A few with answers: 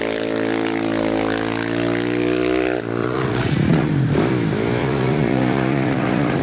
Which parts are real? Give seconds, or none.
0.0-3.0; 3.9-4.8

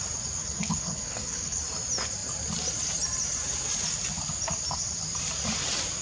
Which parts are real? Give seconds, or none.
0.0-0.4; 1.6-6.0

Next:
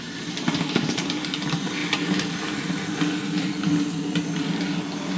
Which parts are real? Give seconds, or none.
0.0-5.2